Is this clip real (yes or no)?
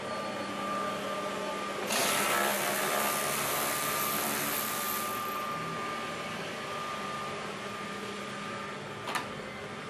yes